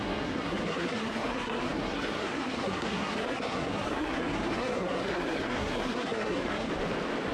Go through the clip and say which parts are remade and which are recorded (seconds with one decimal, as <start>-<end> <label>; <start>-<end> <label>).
0.0-6.7 remade; 6.7-7.3 recorded